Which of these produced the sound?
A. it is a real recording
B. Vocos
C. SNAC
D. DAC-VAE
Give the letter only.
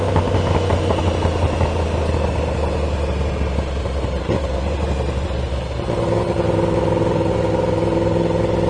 A